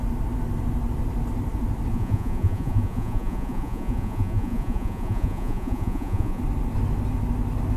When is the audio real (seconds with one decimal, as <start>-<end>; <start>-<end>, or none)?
0.0-1.9; 6.4-7.8

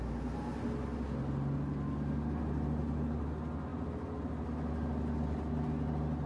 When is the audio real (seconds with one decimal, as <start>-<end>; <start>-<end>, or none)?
0.0-6.3

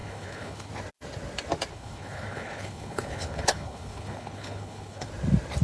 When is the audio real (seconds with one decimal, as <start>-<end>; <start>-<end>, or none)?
0.7-1.7; 5.1-5.6

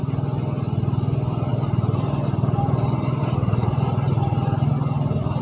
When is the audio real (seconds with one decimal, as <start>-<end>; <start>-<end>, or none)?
0.0-1.5; 4.7-5.4